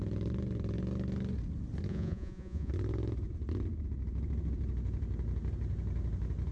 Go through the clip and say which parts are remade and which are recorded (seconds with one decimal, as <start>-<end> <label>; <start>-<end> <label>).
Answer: 0.0-1.9 recorded; 1.9-2.7 remade; 2.7-6.5 recorded